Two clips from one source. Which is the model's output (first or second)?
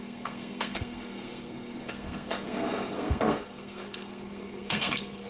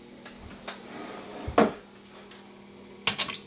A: first